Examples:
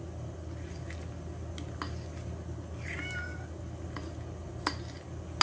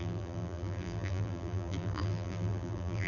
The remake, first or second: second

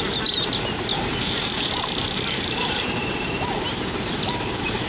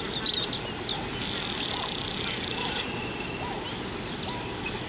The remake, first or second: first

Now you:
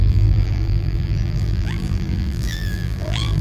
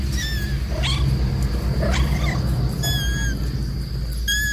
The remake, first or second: first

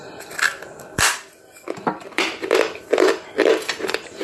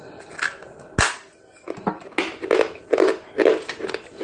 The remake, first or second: first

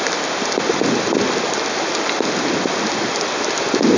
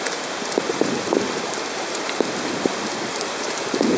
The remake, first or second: second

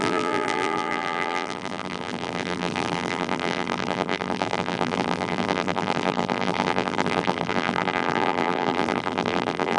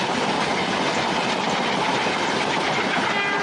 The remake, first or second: first